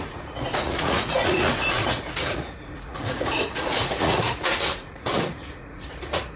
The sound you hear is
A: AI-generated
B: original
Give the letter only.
A